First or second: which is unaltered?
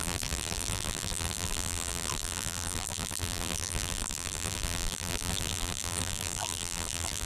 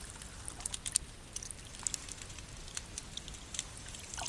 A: second